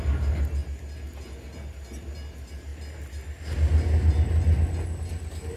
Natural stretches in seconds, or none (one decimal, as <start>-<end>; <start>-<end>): 0.0-5.6